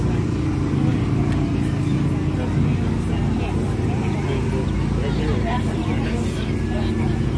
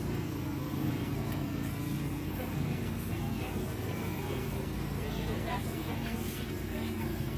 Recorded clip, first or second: first